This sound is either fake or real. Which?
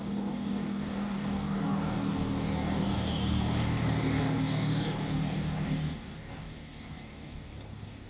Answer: fake